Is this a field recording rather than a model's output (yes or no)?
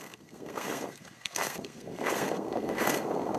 no